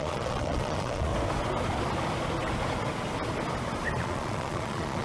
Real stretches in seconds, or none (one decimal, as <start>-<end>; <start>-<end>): 1.1-4.0